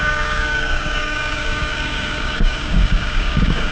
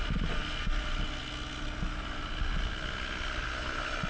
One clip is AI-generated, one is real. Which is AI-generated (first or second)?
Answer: first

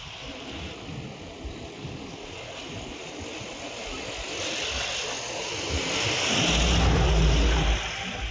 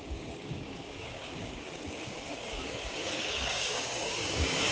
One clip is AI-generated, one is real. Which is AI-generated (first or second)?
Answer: second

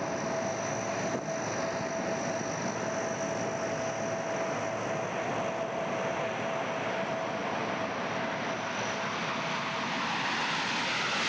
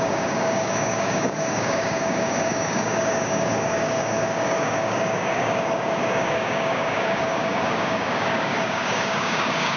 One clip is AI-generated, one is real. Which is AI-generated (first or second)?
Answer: second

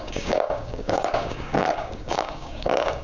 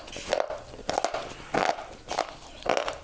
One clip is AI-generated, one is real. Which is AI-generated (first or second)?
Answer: first